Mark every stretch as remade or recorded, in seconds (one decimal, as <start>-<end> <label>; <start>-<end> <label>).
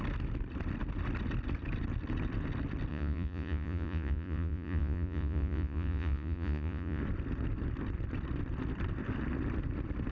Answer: 0.0-2.9 recorded; 2.9-7.0 remade; 7.0-10.1 recorded